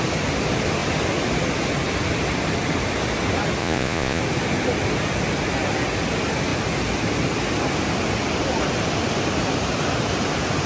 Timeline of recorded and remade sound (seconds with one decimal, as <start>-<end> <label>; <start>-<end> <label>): 0.0-3.6 recorded; 3.6-4.2 remade; 4.2-10.7 recorded